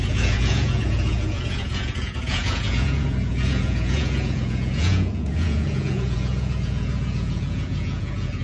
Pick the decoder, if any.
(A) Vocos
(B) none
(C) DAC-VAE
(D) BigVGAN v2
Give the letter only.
A